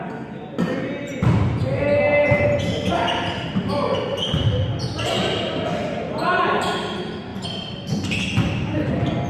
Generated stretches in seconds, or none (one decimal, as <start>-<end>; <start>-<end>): none